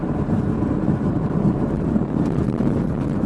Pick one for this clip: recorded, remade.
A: remade